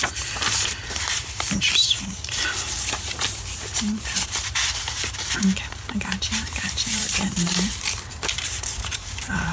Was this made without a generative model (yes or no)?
no